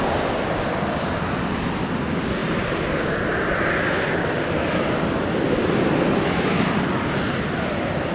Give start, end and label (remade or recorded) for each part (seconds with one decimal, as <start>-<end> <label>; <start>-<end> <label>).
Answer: 0.0-8.1 recorded